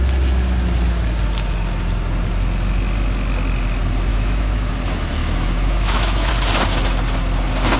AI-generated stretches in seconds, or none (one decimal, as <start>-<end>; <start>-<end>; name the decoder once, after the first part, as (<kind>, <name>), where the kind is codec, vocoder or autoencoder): 4.1-4.7 (autoencoder, DAC-VAE); 5.2-6.3